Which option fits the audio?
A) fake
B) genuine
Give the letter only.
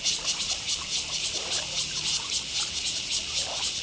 B